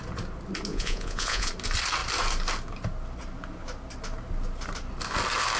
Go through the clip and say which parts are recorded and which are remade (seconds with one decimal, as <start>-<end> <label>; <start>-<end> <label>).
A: 0.0-0.7 recorded; 0.7-1.5 remade; 1.5-5.6 recorded